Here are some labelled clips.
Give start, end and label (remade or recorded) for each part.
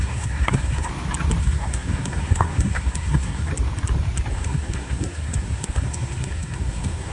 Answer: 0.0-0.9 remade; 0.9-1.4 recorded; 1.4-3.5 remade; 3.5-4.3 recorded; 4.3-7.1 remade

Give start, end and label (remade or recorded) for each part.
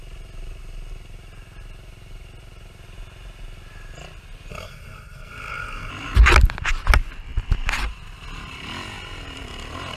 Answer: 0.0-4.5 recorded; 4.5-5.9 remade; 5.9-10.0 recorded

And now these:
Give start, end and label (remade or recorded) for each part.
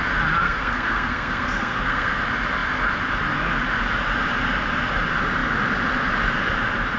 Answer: 0.0-0.4 recorded; 0.4-2.2 remade; 2.2-7.0 recorded